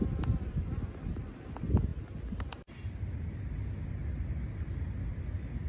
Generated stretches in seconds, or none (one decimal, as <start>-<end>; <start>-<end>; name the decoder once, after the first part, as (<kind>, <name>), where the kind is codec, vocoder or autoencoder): none